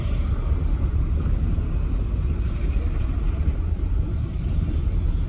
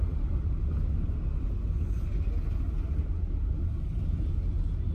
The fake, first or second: first